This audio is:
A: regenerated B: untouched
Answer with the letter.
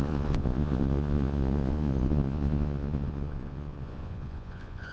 A